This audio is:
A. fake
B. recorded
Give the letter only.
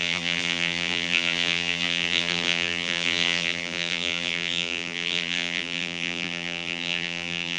A